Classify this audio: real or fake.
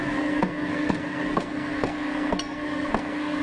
fake